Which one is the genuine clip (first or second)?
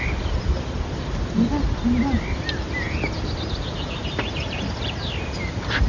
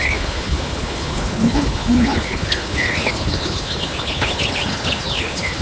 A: first